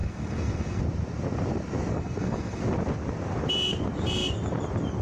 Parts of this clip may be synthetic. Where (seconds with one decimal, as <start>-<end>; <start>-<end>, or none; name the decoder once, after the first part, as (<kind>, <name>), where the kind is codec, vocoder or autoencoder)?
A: 0.0-0.8 (codec, SNAC); 1.9-2.6